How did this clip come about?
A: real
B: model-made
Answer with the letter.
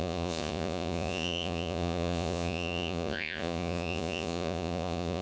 B